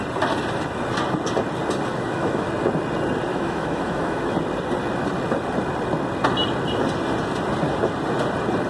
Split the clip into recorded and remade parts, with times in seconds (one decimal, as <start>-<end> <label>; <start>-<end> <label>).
0.0-1.9 recorded; 1.9-2.5 remade; 2.5-3.3 recorded; 3.3-4.3 remade; 4.3-8.7 recorded